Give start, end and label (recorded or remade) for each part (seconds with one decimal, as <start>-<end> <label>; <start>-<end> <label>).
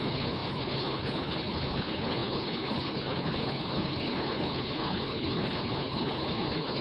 0.0-6.8 remade